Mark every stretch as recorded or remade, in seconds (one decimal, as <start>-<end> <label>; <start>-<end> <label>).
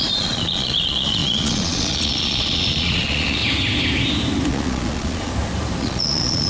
0.0-3.4 remade; 3.4-4.5 recorded; 4.5-5.3 remade; 5.3-5.8 recorded; 5.8-6.5 remade